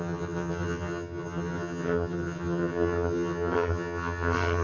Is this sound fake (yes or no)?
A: yes